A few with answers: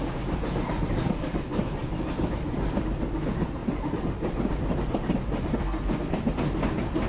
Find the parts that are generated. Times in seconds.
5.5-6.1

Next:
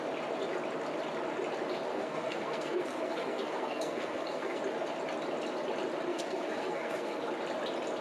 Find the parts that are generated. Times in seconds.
1.9-4.6; 6.1-7.2

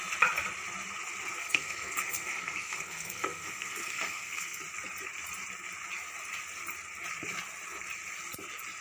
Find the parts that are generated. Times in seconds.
1.4-4.6